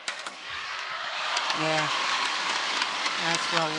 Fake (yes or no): yes